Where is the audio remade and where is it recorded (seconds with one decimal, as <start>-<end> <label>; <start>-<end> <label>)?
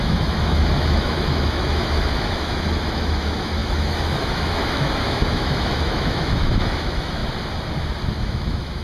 0.0-7.2 remade; 7.2-8.2 recorded; 8.2-8.8 remade